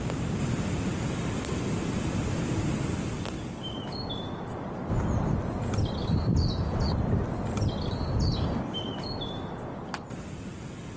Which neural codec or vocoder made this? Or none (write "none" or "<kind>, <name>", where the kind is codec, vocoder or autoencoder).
none